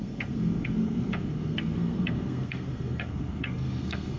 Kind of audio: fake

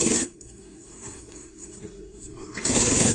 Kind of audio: fake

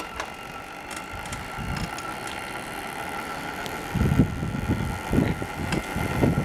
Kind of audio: real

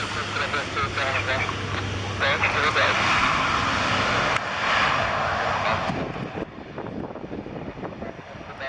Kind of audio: real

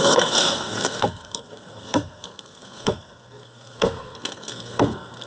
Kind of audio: fake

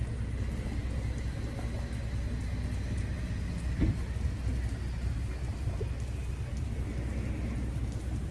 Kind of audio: real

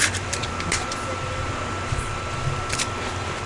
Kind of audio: real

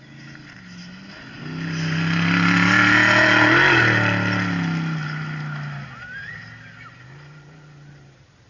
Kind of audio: real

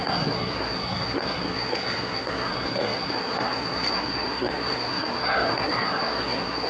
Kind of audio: fake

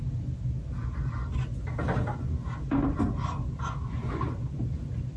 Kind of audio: real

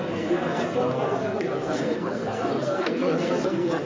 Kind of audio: fake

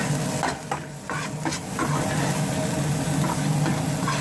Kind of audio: real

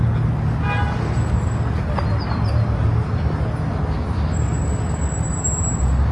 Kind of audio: real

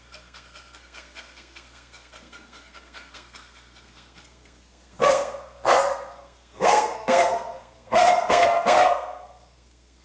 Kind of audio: fake